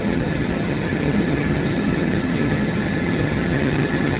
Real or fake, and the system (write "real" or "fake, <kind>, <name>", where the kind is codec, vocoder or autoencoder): fake, vocoder, HiFi-GAN